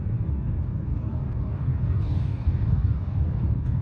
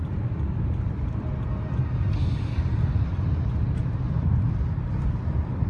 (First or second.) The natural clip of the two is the second